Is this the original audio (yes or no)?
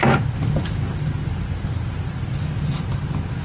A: yes